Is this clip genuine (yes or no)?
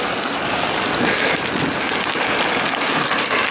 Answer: yes